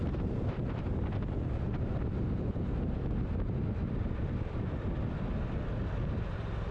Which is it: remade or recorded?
recorded